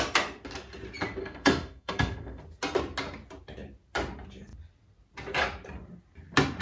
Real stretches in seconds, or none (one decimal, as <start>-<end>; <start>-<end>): 0.0-1.2; 2.4-6.6